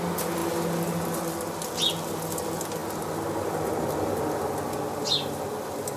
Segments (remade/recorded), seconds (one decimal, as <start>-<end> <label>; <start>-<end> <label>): 0.0-6.0 recorded